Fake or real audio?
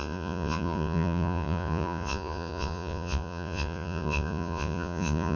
fake